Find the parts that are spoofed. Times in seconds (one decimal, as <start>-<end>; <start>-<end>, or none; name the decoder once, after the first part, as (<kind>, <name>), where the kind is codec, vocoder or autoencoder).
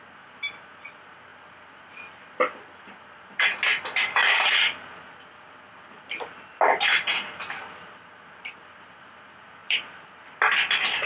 9.6-10.3 (vocoder, BigVGAN v2)